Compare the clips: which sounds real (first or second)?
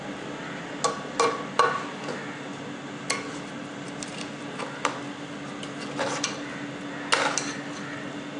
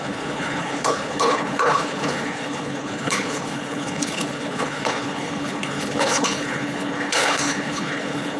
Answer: first